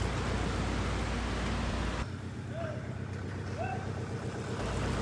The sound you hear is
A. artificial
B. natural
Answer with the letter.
B